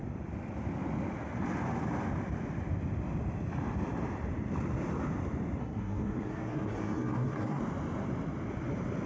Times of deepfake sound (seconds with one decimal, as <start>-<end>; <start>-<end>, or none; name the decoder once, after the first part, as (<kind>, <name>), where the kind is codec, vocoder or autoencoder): 5.6-7.6 (codec, SNAC)